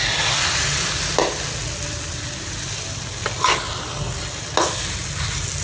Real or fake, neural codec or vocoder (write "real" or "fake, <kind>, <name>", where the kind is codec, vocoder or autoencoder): real